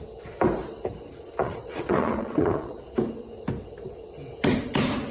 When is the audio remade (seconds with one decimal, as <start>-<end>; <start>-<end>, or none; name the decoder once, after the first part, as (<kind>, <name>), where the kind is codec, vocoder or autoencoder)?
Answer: 1.4-2.8 (vocoder, Vocos)